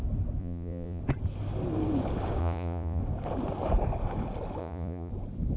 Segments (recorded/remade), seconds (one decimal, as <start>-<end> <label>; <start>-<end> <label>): 0.0-0.4 recorded; 0.4-1.0 remade; 1.0-2.4 recorded; 2.4-3.0 remade; 3.0-4.6 recorded; 4.6-5.1 remade; 5.1-5.6 recorded